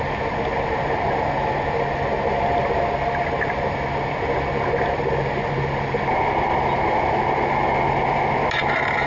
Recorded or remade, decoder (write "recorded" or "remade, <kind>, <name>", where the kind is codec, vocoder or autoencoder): recorded